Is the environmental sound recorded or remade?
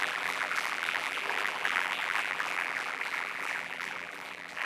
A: remade